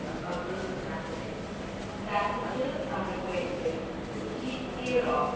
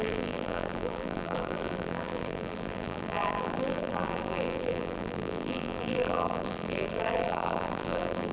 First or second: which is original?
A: first